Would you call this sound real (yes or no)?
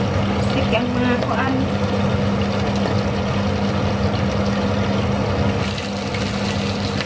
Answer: yes